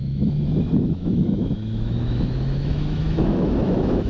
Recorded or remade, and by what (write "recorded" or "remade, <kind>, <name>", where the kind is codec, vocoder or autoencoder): remade, autoencoder, DAC-VAE